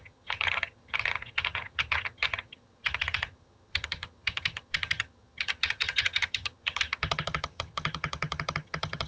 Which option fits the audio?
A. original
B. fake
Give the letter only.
B